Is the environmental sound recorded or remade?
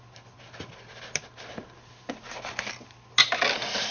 recorded